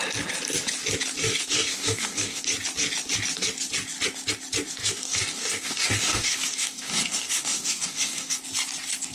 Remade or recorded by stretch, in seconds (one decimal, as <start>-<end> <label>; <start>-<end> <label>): 0.0-1.2 recorded; 1.2-2.4 remade; 2.4-4.8 recorded; 4.8-8.4 remade; 8.4-9.1 recorded